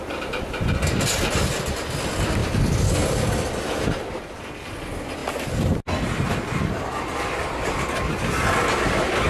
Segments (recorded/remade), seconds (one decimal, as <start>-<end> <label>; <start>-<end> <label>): 0.0-9.3 recorded